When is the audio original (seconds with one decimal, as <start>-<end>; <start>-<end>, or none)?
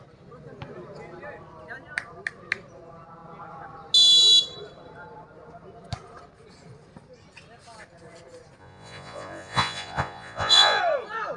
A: 0.0-8.6; 10.8-11.4